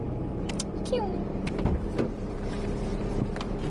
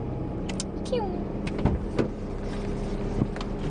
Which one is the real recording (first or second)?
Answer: second